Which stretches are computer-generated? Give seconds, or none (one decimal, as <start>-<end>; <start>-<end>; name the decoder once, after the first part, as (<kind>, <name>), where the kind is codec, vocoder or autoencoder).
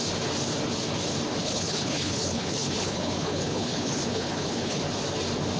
1.4-4.8 (codec, HILCodec)